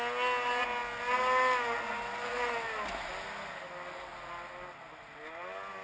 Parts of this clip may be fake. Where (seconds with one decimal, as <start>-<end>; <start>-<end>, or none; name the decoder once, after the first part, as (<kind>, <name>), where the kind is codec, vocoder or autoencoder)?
none